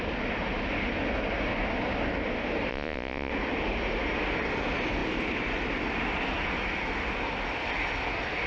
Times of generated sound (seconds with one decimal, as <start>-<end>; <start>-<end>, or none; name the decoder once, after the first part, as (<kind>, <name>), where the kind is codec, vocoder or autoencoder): 2.7-3.3 (vocoder, Vocos)